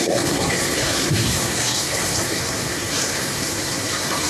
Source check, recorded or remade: remade